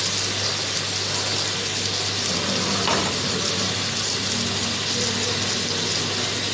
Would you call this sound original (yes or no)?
yes